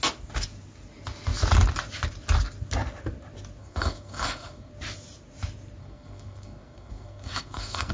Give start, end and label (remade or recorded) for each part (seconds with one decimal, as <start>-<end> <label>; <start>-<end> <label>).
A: 0.0-3.6 recorded; 3.6-4.7 remade; 4.7-5.8 recorded; 5.8-7.9 remade